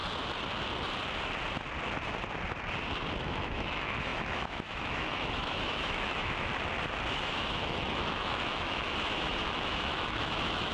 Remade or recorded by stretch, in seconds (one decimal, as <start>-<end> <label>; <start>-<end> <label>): 0.0-3.2 recorded; 3.2-6.5 remade; 6.5-7.1 recorded; 7.1-10.7 remade